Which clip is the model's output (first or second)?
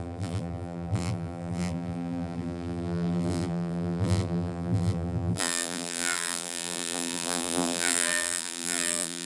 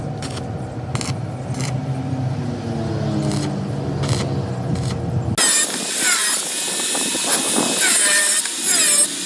first